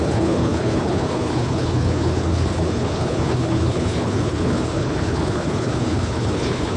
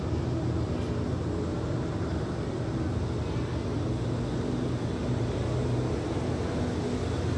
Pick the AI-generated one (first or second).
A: first